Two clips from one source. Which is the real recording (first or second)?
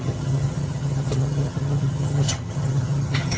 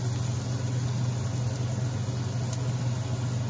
second